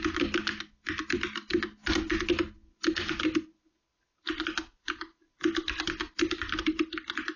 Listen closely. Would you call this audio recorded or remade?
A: recorded